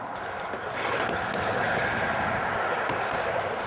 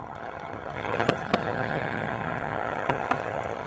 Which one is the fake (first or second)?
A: second